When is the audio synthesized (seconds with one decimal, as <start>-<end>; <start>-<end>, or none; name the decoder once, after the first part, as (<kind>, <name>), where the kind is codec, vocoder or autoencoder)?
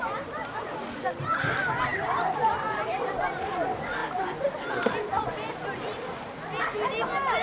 none